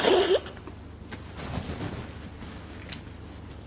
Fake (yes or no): no